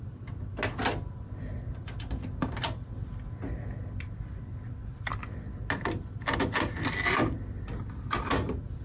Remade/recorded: recorded